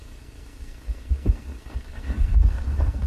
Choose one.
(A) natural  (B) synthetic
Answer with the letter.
B